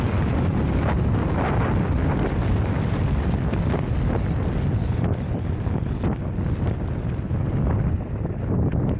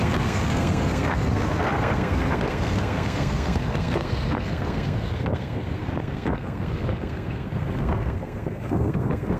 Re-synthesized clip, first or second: second